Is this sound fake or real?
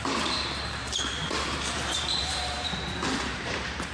fake